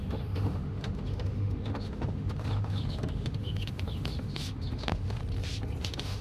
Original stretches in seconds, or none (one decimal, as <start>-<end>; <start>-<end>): 5.2-5.8